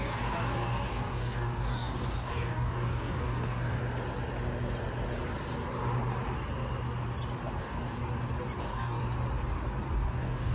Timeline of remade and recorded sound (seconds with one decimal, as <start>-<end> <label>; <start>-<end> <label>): 0.0-3.8 remade; 3.8-7.6 recorded; 7.6-8.0 remade; 8.0-8.6 recorded; 8.6-9.0 remade; 9.0-10.1 recorded; 10.1-10.5 remade